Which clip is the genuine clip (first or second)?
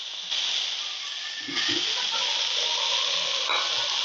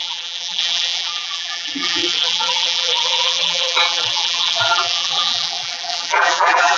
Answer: first